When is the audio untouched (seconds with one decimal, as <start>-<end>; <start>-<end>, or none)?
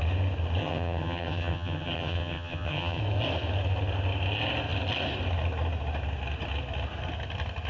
0.0-0.6; 3.0-7.7